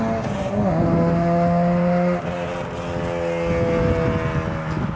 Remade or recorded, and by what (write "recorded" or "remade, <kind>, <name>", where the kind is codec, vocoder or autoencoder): recorded